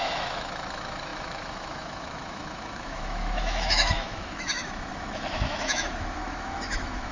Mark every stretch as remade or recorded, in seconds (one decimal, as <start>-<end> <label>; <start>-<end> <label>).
0.0-7.1 remade